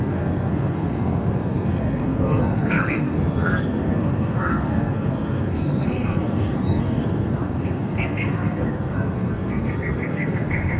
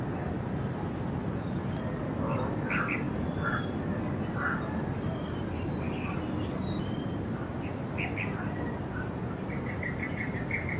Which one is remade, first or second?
first